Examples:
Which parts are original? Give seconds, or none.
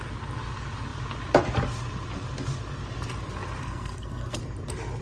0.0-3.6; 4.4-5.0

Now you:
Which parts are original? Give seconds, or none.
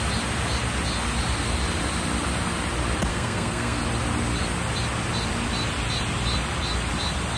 0.0-3.1; 3.8-7.4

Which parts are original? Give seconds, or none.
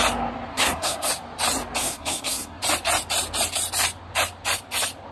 0.0-0.5; 1.1-1.8; 2.6-5.1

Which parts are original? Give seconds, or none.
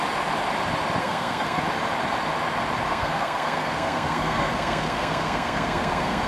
0.0-1.0; 1.6-2.9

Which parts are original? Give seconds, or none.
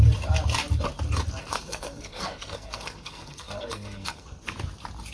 0.0-1.4; 4.5-5.1